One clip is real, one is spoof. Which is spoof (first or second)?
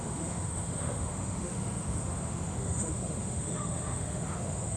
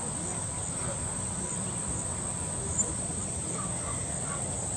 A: first